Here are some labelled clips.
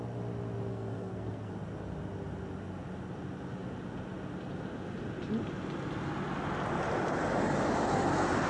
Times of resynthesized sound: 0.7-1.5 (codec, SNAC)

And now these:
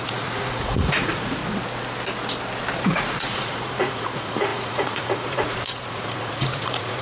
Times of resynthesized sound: 0.0-1.4 (vocoder, Vocos); 2.8-7.0

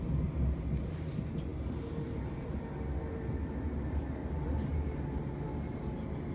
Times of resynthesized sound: none